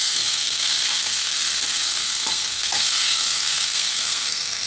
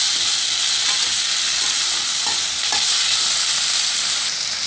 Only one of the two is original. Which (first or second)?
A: second